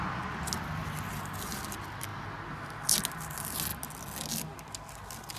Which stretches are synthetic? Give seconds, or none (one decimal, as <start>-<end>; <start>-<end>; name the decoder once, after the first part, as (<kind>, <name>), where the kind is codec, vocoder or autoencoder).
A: none